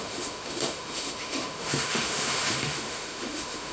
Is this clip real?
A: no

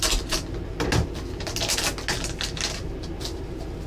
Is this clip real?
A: yes